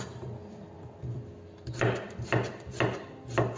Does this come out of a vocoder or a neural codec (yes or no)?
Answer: no